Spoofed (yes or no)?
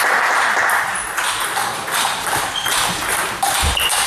no